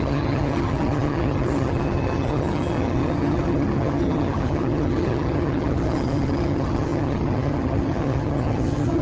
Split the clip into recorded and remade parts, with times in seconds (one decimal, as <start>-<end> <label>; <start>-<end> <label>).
0.0-9.0 remade